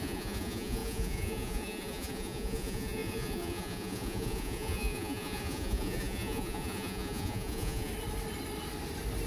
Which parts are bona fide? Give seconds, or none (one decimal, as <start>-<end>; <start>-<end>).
7.9-9.3